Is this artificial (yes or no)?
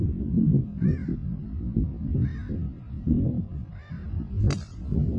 no